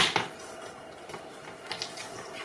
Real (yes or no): no